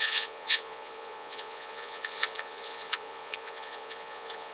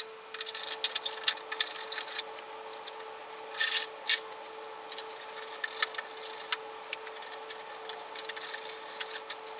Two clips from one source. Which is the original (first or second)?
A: second